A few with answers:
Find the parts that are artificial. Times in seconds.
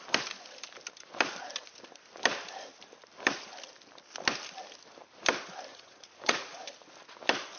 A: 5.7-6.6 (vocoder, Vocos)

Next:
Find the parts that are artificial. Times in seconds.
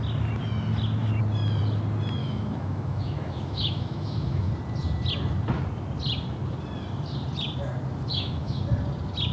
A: 2.2-4.5 (autoencoder, DAC-VAE); 8.1-8.6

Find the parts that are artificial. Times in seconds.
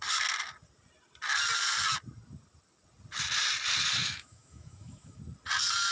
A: 4.0-5.2 (autoencoder, DAC-VAE)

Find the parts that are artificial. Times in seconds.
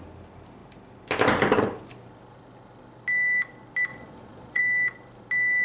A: 3.9-4.6 (vocoder, Vocos)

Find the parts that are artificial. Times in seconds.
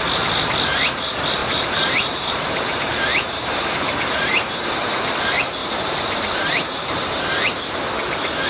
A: 1.4-4.7 (vocoder, BigVGAN v2); 5.6-7.7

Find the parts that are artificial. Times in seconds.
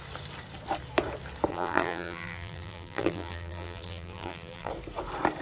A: 1.5-4.7 (vocoder, BigVGAN v2)